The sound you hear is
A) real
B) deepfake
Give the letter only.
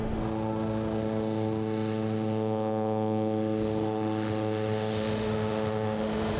B